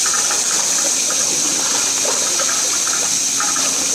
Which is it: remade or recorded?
recorded